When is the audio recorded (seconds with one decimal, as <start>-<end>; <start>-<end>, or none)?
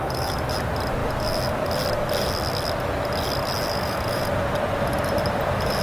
0.0-3.7; 4.3-5.8